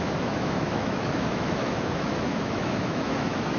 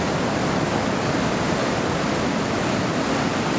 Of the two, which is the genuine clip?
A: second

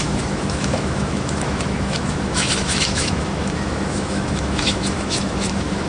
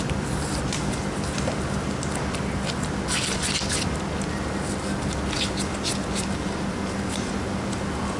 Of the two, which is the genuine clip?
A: second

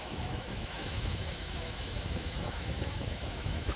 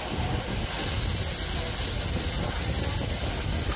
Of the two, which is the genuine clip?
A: second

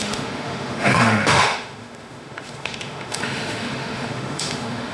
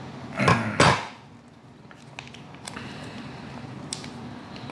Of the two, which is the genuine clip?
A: second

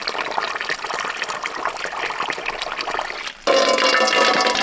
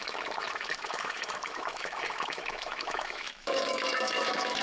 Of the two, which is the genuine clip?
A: first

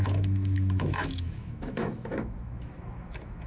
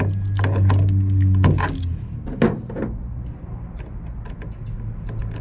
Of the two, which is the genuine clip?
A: second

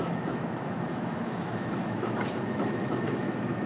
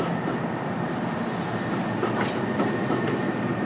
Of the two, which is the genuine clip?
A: second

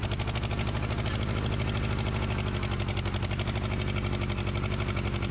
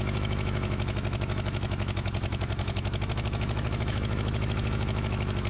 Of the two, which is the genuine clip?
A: first